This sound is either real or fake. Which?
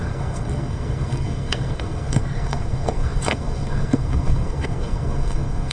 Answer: fake